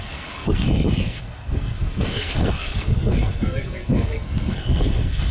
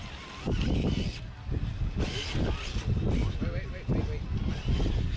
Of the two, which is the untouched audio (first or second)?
second